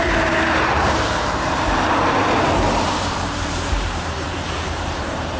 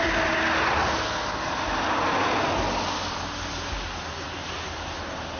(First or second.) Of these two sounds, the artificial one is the first